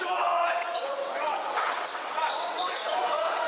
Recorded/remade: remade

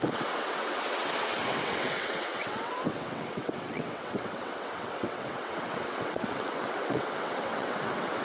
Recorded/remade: remade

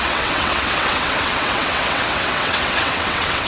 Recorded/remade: remade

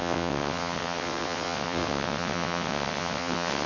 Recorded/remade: remade